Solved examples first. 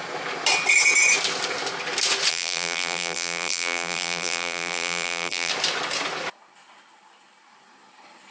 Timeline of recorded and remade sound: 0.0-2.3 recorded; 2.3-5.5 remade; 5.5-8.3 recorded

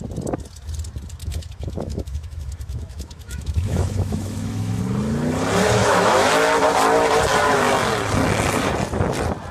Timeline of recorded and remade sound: 0.0-1.2 recorded; 1.2-4.8 remade; 4.8-5.8 recorded; 5.8-6.3 remade; 6.3-9.5 recorded

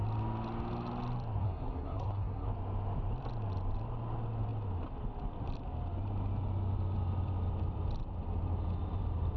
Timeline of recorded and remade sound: 0.0-1.4 recorded; 1.4-2.5 remade; 2.5-9.4 recorded

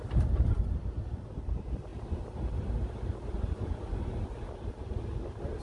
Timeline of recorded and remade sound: 0.0-5.6 recorded

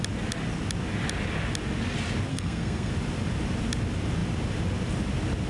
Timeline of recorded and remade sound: 0.0-2.3 recorded; 2.3-2.9 remade; 2.9-5.5 recorded